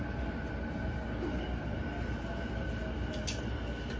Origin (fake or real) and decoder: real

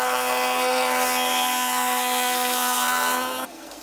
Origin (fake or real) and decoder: fake, codec, SNAC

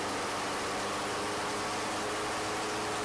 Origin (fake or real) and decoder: real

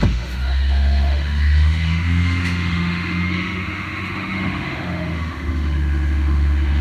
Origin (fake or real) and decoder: fake, autoencoder, DAC-VAE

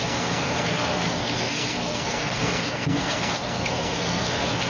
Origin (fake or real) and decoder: fake, codec, SNAC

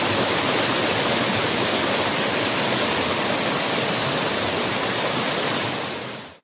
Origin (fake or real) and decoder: real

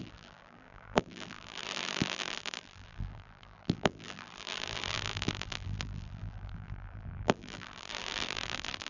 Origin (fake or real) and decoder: fake, vocoder, BigVGAN v2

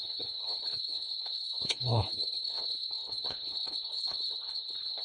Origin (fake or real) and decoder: fake, codec, HILCodec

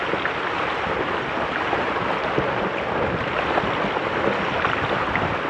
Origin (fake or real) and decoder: real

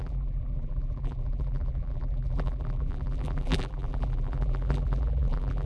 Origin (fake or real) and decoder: fake, vocoder, BigVGAN v2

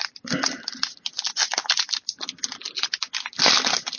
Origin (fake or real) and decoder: real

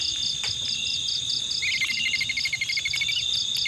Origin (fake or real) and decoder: real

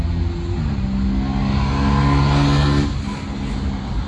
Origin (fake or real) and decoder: real